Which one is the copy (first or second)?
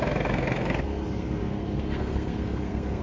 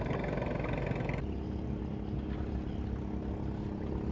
first